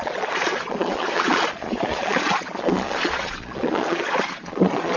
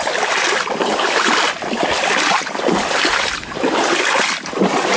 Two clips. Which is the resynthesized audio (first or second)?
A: first